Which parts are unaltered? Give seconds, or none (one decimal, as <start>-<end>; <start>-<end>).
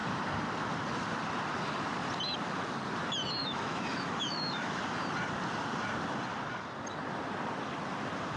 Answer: 0.0-3.4; 4.8-8.4